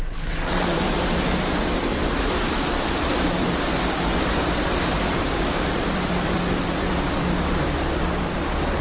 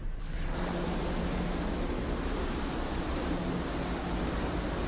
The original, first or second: second